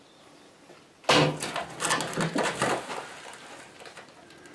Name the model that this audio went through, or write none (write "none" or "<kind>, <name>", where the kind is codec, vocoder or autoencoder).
none